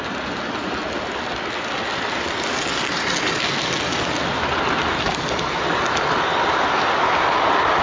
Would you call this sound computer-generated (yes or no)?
no